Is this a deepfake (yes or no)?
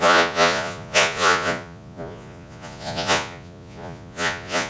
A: yes